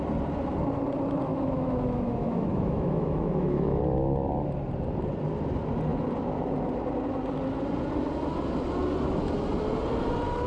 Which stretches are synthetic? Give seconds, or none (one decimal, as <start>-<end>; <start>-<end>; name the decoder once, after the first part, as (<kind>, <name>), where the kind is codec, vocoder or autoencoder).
1.3-3.8 (autoencoder, DAC-VAE)